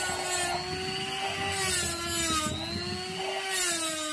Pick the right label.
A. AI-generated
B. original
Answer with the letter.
B